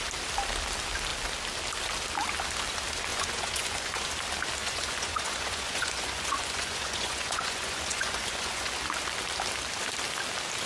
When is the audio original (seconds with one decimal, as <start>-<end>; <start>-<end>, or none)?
0.0-3.1; 4.1-4.6; 8.7-10.7